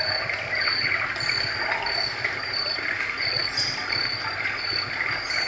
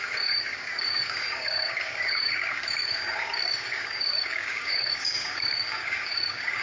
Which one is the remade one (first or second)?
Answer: second